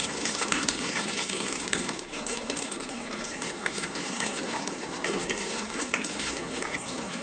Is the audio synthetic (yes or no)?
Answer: yes